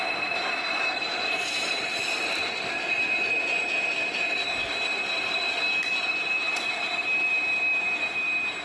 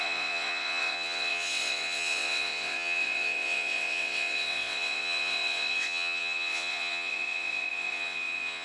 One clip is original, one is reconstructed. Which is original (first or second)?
first